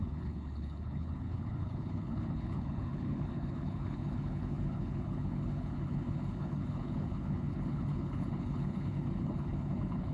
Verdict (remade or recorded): remade